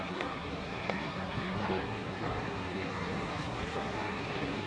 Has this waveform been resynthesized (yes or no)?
yes